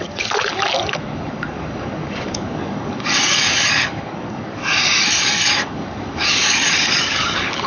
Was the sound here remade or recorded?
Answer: remade